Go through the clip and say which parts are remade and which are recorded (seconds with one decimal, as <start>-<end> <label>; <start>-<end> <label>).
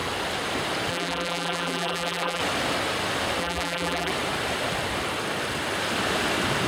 0.0-0.9 recorded; 0.9-2.4 remade; 2.4-3.4 recorded; 3.4-4.1 remade; 4.1-6.7 recorded